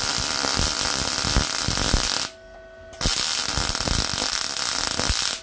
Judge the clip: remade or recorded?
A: recorded